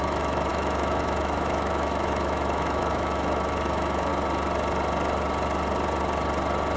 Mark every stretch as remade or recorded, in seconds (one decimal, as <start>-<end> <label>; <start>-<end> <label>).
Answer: 0.0-4.1 remade; 4.1-6.8 recorded